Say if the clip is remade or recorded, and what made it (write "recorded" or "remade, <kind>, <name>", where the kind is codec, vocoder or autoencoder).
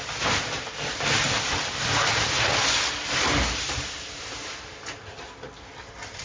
recorded